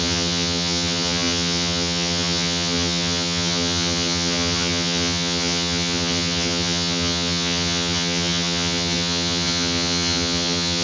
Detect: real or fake fake